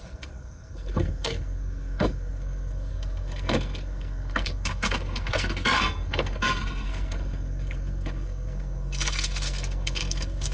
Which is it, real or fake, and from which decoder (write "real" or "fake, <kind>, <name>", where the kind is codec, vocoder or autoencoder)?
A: fake, codec, SNAC